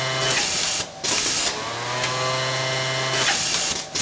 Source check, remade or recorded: recorded